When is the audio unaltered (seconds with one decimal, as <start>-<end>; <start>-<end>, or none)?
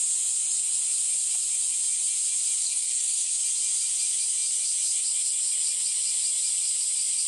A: 0.0-2.6; 3.3-7.3